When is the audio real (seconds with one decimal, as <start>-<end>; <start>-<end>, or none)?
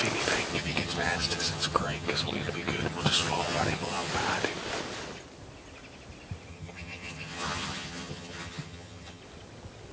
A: 0.0-0.5; 4.1-6.5; 9.2-9.9